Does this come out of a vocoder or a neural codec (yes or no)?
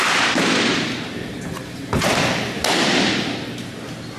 no